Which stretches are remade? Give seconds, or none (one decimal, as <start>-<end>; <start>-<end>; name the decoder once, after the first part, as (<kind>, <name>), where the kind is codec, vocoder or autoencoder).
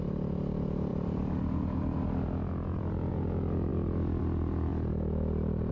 0.9-3.1 (vocoder, BigVGAN v2)